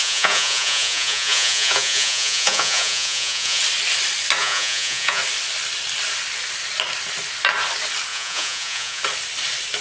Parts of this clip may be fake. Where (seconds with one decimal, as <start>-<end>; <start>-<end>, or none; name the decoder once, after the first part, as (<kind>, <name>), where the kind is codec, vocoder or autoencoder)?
0.0-3.6 (vocoder, Vocos); 4.4-5.2; 8.1-9.0